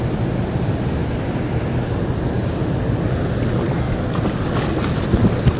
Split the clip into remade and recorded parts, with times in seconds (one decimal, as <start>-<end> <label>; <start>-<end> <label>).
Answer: 0.0-5.6 recorded